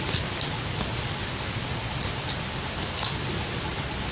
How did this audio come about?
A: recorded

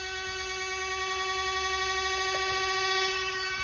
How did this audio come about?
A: recorded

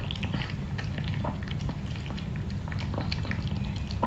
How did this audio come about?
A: recorded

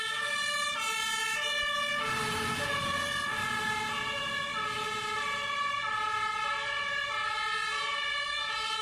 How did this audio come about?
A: recorded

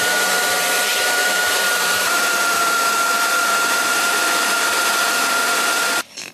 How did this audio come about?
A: remade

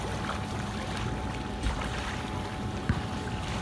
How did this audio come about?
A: remade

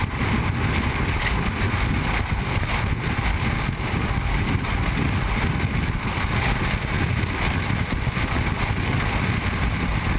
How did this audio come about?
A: recorded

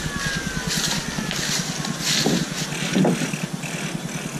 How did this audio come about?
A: recorded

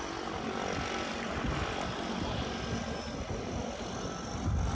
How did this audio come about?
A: remade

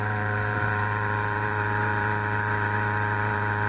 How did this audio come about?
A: remade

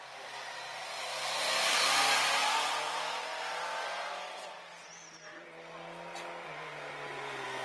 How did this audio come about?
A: recorded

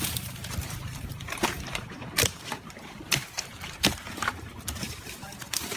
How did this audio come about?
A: remade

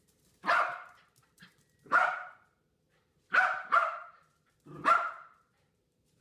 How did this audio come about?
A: remade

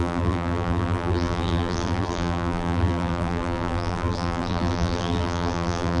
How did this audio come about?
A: remade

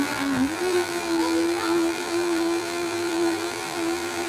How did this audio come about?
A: remade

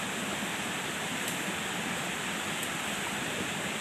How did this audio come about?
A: recorded